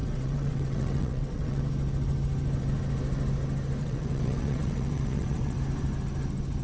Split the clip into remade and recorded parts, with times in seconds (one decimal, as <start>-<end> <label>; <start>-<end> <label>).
0.0-1.6 remade; 1.6-3.8 recorded; 3.8-5.6 remade; 5.6-6.6 recorded

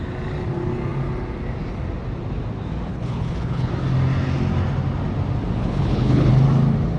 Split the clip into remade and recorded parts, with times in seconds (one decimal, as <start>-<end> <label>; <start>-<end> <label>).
0.0-2.9 recorded; 2.9-3.7 remade; 3.7-5.6 recorded; 5.6-6.3 remade; 6.3-7.0 recorded

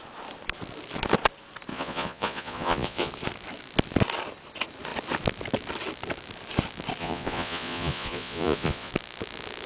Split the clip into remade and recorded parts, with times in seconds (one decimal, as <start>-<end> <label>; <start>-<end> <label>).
0.0-1.7 recorded; 1.7-3.1 remade; 3.1-7.0 recorded; 7.0-8.9 remade; 8.9-9.7 recorded